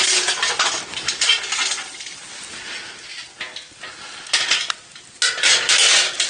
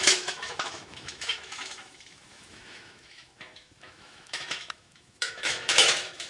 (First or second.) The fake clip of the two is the second